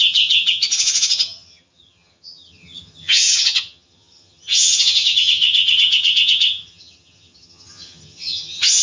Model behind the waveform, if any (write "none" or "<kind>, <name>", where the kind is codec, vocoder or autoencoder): vocoder, HiFi-GAN